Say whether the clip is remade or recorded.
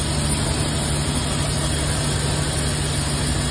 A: recorded